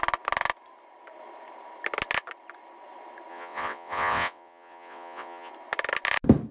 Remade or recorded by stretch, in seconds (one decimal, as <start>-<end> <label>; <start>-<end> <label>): 0.0-3.3 recorded; 3.3-5.5 remade; 5.5-6.5 recorded